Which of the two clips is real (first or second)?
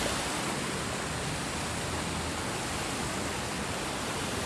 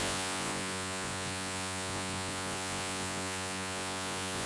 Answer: first